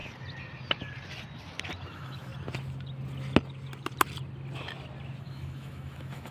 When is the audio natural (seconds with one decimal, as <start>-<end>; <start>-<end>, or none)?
0.0-1.9; 2.3-5.2